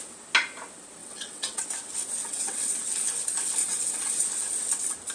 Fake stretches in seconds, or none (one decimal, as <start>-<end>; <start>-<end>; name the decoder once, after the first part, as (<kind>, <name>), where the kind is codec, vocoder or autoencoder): 1.0-1.6 (vocoder, WaveNeXt); 2.2-2.8; 3.6-4.2

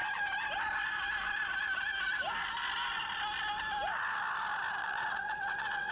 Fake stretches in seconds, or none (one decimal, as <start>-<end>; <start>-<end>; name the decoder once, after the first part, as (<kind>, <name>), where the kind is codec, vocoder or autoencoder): 4.8-5.9 (vocoder, WaveNeXt)

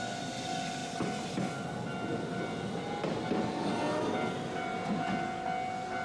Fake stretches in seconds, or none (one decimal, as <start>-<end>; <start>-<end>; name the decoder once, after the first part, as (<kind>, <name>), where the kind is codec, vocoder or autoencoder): none

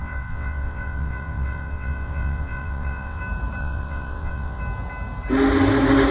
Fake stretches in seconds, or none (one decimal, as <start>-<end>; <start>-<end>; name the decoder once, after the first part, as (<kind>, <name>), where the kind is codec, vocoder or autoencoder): 0.0-3.2 (vocoder, WaveNeXt); 3.6-4.6

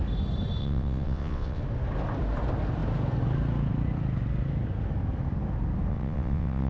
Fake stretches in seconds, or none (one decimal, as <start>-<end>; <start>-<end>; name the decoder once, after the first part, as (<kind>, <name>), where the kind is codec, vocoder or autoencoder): 0.6-1.6 (vocoder, WaveNeXt); 5.9-6.7

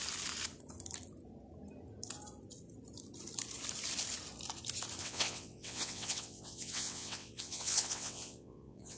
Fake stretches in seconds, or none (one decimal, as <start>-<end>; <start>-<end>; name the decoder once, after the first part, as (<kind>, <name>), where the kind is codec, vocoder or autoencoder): 5.0-9.0 (vocoder, WaveNeXt)

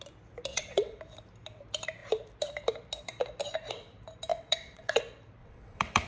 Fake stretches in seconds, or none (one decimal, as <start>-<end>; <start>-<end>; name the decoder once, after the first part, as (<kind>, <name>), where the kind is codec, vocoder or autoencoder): 0.5-1.0 (vocoder, WaveNeXt); 4.3-4.9; 5.4-6.1

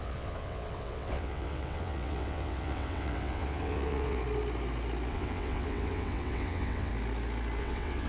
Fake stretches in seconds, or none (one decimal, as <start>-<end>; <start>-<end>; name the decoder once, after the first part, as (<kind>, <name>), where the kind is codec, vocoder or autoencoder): 0.0-4.2 (vocoder, WaveNeXt); 5.1-6.9; 7.6-8.1